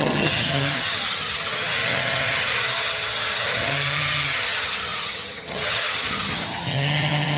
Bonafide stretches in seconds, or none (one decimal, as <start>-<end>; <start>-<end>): none